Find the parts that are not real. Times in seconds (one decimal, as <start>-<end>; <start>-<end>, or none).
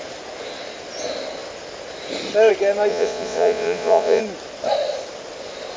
2.9-4.2